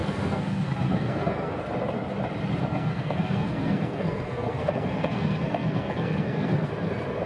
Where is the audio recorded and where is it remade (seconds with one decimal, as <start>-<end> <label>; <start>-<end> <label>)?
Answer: 0.0-1.6 remade; 1.6-2.7 recorded; 2.7-6.7 remade; 6.7-7.3 recorded